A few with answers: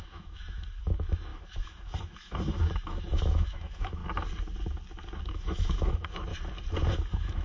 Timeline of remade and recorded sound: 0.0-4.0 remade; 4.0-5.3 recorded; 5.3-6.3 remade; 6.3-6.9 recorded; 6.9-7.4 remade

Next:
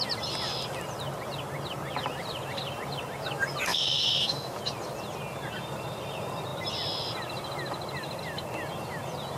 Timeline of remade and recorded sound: 0.0-3.7 recorded; 3.7-4.6 remade; 4.6-9.4 recorded

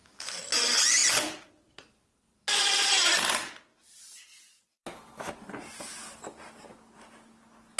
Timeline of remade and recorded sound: 0.0-0.6 remade; 0.6-4.8 recorded; 4.8-5.3 remade; 5.3-7.8 recorded

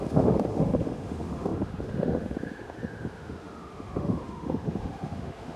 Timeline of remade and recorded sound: 0.0-5.6 remade

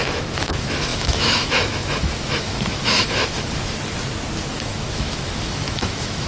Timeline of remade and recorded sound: 0.0-3.5 remade; 3.5-4.5 recorded; 4.5-6.3 remade

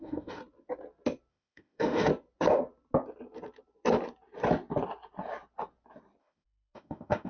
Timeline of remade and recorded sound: 0.0-0.4 remade; 0.4-1.3 recorded; 1.3-2.1 remade; 2.1-6.2 recorded; 6.2-7.3 remade